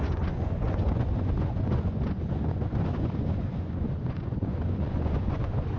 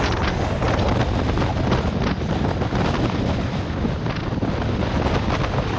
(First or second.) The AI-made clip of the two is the first